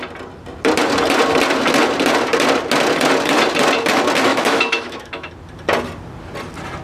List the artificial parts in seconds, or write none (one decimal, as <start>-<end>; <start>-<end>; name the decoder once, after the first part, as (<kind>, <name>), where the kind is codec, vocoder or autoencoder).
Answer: 4.3-5.3 (autoencoder, DAC-VAE)